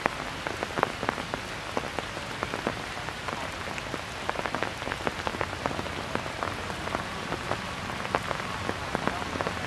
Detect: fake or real real